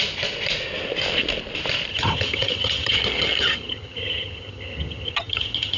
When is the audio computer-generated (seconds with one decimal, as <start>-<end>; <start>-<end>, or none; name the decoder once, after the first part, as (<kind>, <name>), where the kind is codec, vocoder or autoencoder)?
1.9-5.8 (vocoder, HiFi-GAN)